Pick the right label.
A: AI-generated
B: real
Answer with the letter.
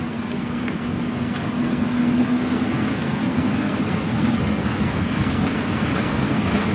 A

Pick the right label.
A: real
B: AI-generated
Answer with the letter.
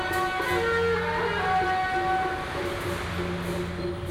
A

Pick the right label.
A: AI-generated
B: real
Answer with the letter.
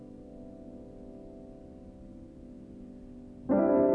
B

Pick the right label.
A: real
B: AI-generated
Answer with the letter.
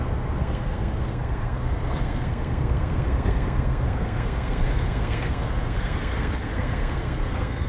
B